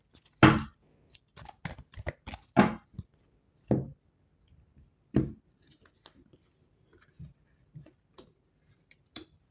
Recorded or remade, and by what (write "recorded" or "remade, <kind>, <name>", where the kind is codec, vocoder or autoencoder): recorded